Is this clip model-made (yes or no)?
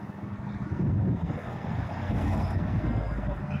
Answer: yes